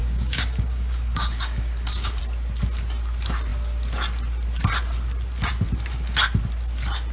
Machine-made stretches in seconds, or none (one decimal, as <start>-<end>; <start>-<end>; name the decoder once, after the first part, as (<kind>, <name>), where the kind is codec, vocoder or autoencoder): 0.0-2.2 (codec, DAC)